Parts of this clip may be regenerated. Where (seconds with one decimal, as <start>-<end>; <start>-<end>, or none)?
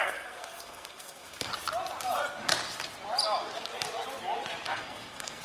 0.0-1.5; 4.7-5.4